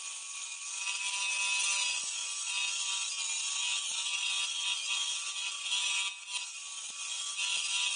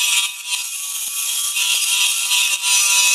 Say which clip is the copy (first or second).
second